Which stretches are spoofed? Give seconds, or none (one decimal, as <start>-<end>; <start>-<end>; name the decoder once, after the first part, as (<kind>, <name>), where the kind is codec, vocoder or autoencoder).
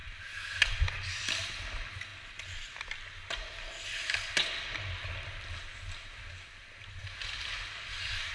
none